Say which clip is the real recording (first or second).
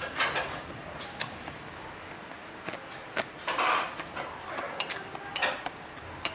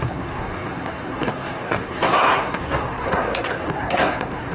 first